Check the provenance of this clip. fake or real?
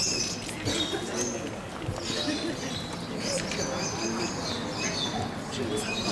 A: real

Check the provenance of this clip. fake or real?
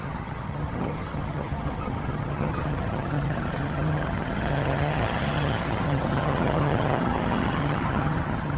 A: fake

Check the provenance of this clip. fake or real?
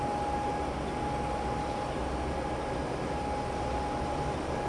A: real